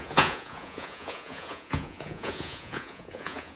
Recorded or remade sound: remade